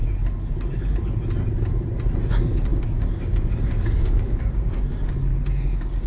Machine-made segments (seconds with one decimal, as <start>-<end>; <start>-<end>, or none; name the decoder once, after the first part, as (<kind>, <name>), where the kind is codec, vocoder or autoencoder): 2.3-6.1 (codec, DAC)